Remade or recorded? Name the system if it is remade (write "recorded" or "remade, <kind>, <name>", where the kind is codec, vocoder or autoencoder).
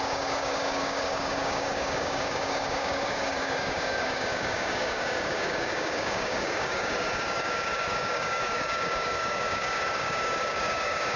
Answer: remade, codec, DAC